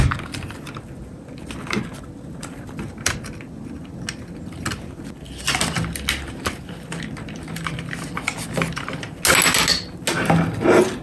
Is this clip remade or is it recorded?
recorded